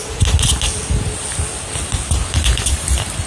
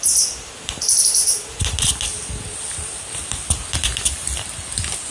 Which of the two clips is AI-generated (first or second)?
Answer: second